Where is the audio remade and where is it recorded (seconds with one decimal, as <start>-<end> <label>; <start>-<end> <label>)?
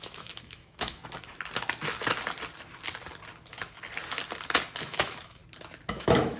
0.0-1.0 remade; 1.0-4.8 recorded; 4.8-5.4 remade; 5.4-5.9 recorded; 5.9-6.4 remade